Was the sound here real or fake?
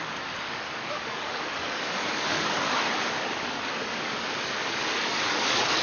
fake